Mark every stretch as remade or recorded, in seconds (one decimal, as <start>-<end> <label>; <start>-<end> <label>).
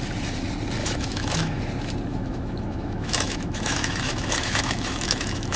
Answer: 0.0-0.8 recorded; 0.8-1.6 remade; 1.6-2.1 recorded; 2.1-5.6 remade